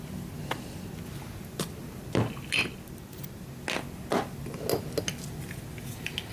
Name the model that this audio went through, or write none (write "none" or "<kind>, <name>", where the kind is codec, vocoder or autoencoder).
none